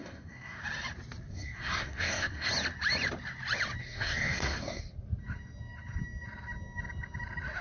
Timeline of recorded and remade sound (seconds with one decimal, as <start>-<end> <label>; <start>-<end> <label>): 0.0-0.6 remade; 0.6-1.3 recorded; 1.3-2.5 remade; 2.5-3.8 recorded; 3.8-4.8 remade; 4.8-7.6 recorded